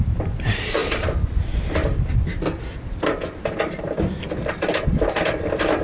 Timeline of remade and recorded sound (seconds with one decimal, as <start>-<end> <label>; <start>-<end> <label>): 0.0-5.8 remade